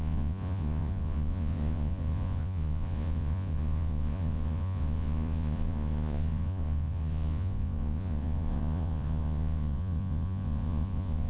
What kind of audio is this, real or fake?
fake